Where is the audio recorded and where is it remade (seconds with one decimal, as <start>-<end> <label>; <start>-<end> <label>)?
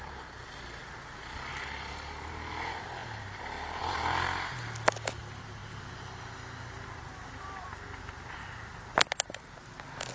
0.0-10.1 recorded